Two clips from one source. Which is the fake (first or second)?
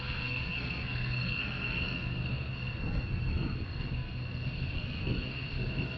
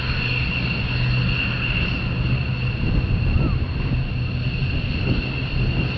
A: first